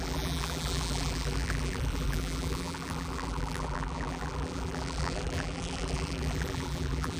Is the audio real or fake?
fake